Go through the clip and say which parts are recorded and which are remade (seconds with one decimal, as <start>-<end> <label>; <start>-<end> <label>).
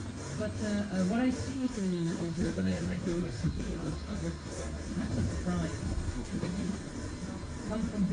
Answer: 0.0-1.5 recorded; 1.5-5.3 remade; 5.3-5.8 recorded; 5.8-6.9 remade; 6.9-8.1 recorded